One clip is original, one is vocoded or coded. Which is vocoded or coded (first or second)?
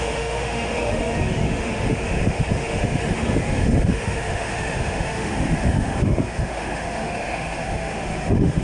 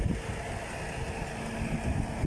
first